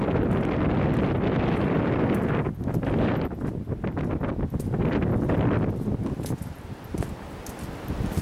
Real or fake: real